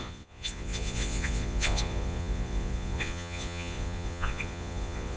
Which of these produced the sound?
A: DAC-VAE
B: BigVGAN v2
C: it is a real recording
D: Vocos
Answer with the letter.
D